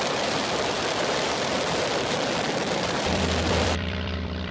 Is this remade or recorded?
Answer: remade